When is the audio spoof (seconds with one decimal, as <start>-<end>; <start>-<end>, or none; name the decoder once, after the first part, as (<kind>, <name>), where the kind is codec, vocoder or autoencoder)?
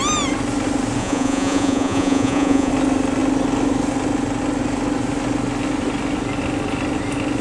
1.0-2.7 (vocoder, Vocos)